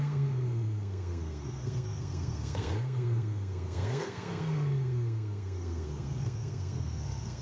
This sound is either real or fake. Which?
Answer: fake